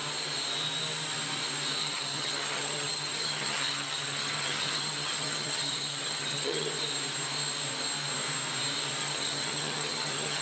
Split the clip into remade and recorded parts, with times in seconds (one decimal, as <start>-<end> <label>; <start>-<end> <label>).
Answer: 0.0-1.8 recorded; 1.8-6.7 remade; 6.7-9.0 recorded; 9.0-10.4 remade